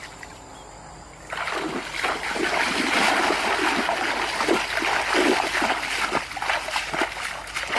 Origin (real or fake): real